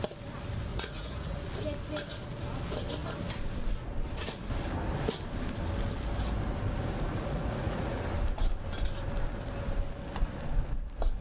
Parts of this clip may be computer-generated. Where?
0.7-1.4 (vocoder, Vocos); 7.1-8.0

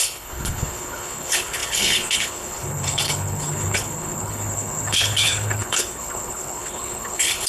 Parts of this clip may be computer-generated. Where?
0.0-7.5 (codec, HILCodec)

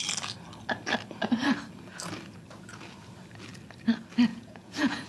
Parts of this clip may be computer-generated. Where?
4.3-5.1 (vocoder, Vocos)

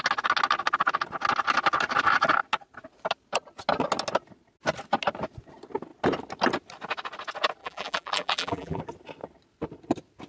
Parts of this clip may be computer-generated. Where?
7.6-8.8 (vocoder, BigVGAN v2)

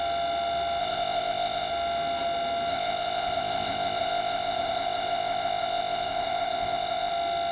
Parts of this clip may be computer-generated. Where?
0.8-1.7 (codec, ZipCodec); 2.7-7.1